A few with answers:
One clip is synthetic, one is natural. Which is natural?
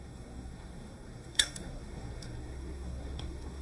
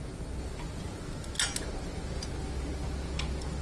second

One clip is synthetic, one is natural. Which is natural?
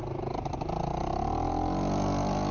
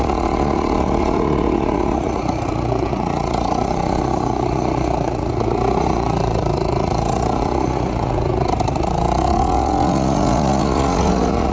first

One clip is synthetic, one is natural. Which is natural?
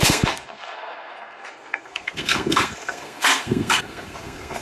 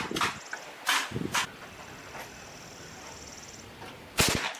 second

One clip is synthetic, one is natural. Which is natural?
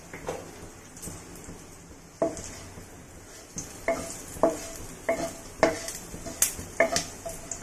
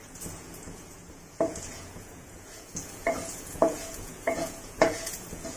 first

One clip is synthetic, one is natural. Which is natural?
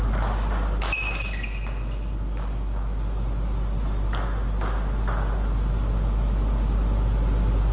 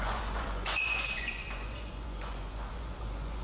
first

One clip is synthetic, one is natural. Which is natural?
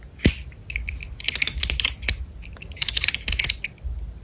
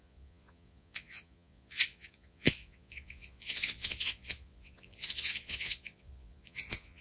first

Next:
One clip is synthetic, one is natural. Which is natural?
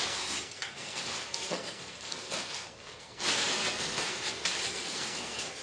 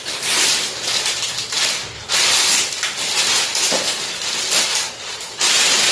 second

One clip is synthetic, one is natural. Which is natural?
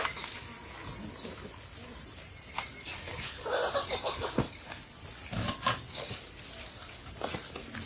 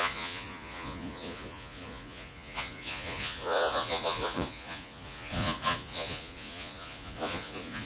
first